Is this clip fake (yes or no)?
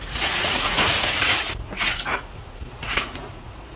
yes